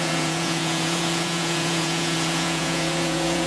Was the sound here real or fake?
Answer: fake